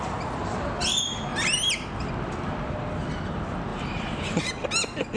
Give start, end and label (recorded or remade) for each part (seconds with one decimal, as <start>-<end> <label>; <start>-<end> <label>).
0.0-3.7 recorded; 3.7-4.5 remade; 4.5-5.2 recorded